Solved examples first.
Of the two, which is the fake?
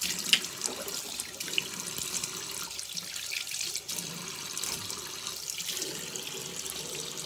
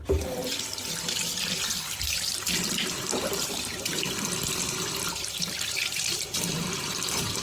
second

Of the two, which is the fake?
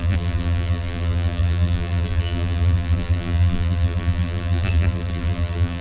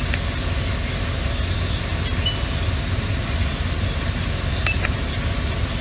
first